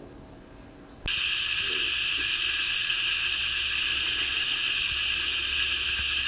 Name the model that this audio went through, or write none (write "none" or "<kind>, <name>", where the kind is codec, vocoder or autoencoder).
none